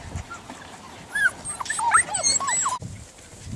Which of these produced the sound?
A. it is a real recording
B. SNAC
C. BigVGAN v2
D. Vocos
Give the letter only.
A